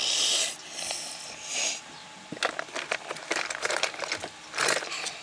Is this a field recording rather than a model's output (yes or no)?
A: yes